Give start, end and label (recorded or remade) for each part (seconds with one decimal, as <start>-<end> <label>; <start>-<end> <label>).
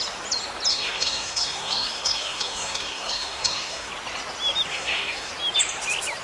0.0-0.7 recorded; 0.7-3.9 remade; 3.9-4.7 recorded; 4.7-5.3 remade; 5.3-6.2 recorded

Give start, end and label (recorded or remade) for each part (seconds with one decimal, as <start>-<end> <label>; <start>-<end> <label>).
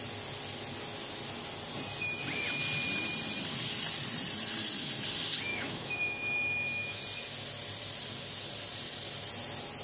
0.0-5.5 recorded; 5.5-7.0 remade; 7.0-9.8 recorded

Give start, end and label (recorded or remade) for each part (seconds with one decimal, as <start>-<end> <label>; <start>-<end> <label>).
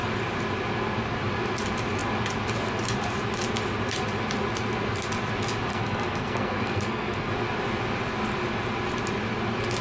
0.0-5.7 recorded; 5.7-7.3 remade; 7.3-9.8 recorded